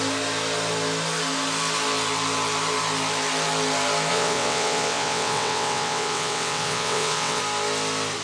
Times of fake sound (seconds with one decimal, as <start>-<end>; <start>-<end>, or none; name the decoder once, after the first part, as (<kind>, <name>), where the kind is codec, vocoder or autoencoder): 4.1-7.4 (vocoder, WaveNeXt)